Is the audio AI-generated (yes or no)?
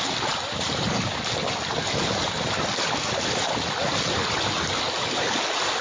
no